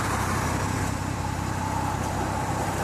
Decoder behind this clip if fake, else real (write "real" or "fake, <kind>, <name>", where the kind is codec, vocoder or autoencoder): fake, vocoder, BigVGAN v2